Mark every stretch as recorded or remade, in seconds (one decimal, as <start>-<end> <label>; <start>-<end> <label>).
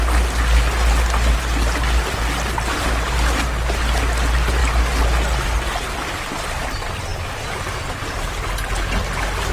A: 0.0-9.5 recorded